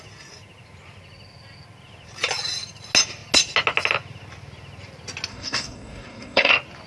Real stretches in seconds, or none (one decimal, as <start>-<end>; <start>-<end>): 0.0-5.3; 6.5-6.9